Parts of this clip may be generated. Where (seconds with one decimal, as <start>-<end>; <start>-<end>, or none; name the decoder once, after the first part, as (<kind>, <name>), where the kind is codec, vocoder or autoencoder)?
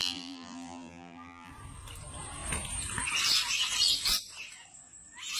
0.0-1.5 (vocoder, BigVGAN v2)